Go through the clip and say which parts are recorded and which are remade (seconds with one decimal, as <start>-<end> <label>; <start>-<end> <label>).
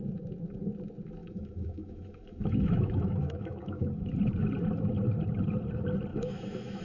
0.0-1.2 recorded; 1.2-4.1 remade; 4.1-6.1 recorded; 6.1-6.8 remade